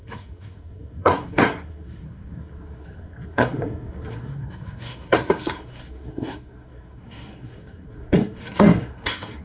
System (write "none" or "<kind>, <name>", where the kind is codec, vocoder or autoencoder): codec, SNAC